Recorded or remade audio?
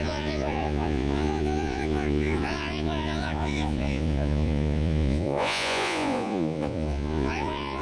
remade